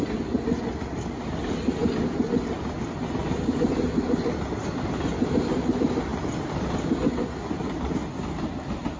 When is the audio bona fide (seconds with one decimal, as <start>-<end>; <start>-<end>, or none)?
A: 0.0-9.0